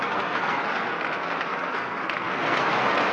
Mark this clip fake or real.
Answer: fake